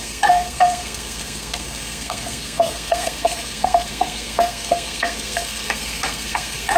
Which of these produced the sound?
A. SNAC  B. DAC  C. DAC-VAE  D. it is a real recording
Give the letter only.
A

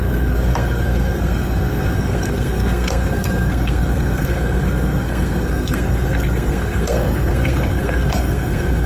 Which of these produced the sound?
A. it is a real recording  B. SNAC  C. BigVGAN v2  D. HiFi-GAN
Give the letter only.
B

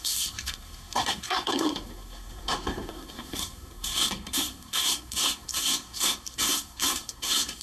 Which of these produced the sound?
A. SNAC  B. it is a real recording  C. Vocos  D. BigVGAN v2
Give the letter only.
A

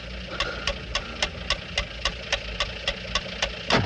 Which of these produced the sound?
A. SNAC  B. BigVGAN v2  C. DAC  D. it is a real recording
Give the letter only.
D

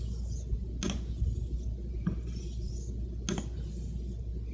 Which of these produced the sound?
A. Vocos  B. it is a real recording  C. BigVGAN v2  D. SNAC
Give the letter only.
B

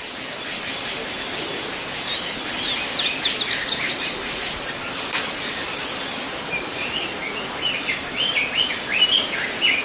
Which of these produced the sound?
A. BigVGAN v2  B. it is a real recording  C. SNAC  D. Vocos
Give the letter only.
B